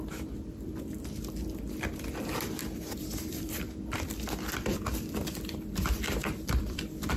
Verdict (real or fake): fake